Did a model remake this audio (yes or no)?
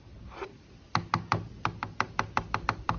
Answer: no